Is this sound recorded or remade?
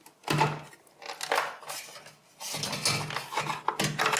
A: recorded